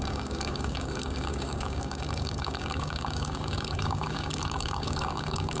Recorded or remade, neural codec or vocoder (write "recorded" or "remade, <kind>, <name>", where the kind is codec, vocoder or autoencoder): remade, codec, DAC